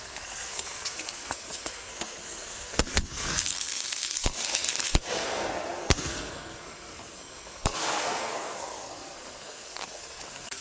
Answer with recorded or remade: remade